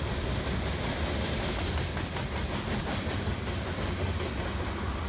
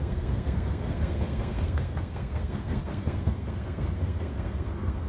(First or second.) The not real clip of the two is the second